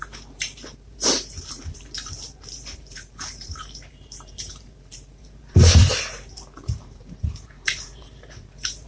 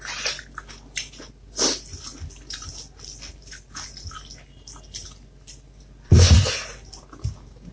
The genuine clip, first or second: second